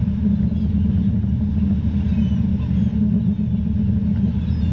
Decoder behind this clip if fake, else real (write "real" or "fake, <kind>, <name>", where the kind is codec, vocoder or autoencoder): real